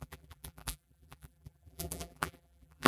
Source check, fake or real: fake